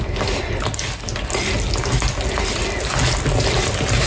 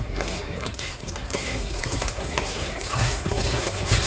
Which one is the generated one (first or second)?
second